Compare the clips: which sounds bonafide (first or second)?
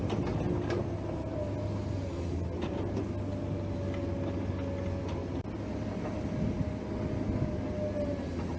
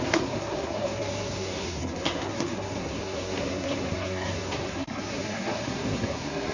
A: first